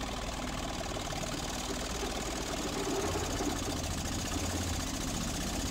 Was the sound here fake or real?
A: real